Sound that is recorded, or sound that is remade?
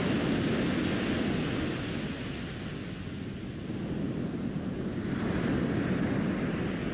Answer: recorded